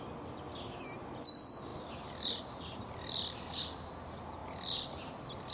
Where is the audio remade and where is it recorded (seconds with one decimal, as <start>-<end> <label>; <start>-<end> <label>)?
0.0-5.5 recorded